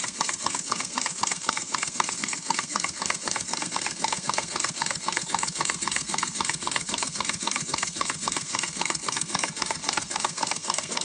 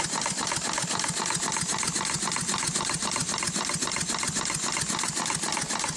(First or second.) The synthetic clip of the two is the first